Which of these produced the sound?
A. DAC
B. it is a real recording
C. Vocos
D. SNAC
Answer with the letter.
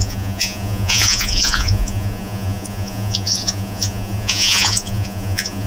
C